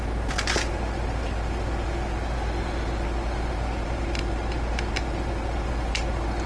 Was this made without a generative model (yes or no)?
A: yes